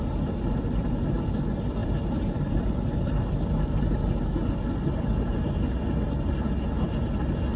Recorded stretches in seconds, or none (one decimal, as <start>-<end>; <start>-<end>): 0.0-7.6